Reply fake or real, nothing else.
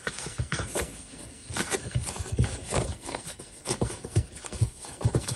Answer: fake